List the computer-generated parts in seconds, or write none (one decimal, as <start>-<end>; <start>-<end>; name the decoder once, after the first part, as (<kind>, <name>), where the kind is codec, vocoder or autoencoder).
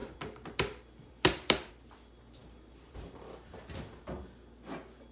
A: 0.0-1.7 (vocoder, BigVGAN v2); 2.4-3.6